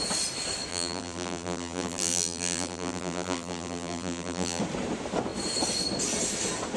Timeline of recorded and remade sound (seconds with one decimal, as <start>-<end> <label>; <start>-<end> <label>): 0.0-0.7 recorded; 0.7-4.6 remade; 4.6-6.8 recorded